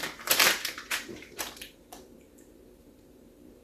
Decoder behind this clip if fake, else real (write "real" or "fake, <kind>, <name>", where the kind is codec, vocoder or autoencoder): fake, vocoder, BigVGAN v2